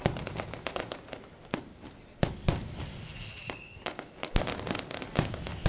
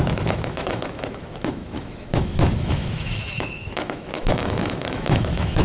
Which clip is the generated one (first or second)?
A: second